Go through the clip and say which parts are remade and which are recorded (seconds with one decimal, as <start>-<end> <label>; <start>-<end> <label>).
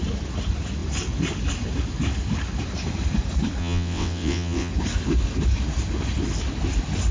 0.0-3.6 recorded; 3.6-4.7 remade; 4.7-7.1 recorded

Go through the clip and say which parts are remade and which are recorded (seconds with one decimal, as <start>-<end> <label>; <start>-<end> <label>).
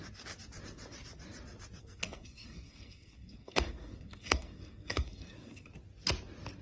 0.0-1.8 recorded; 1.8-5.7 remade; 5.7-6.6 recorded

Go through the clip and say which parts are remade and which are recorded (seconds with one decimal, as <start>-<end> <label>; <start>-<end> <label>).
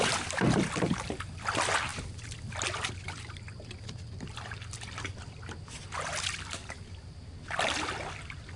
0.0-8.6 recorded